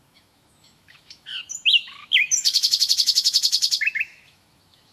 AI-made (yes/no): yes